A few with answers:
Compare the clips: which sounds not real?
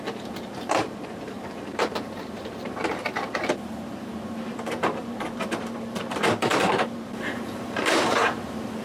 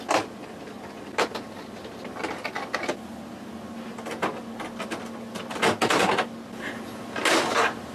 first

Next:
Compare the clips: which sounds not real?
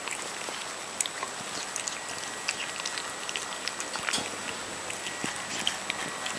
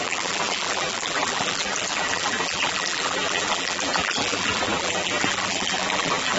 second